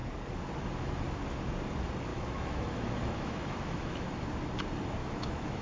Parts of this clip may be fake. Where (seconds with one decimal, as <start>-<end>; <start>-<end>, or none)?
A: 2.1-4.1; 5.0-5.6